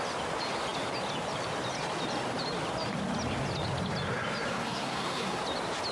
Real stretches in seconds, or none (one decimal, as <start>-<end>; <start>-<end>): 0.0-4.5; 5.4-5.9